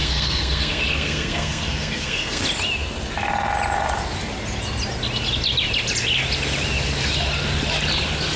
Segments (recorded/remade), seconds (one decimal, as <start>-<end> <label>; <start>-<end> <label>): 0.0-2.4 remade; 2.4-8.4 recorded